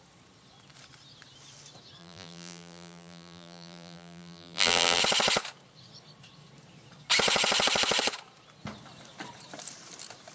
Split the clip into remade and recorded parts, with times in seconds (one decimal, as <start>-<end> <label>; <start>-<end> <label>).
0.0-2.0 recorded; 2.0-5.0 remade; 5.0-10.3 recorded